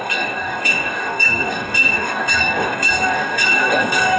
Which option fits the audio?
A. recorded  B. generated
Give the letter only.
B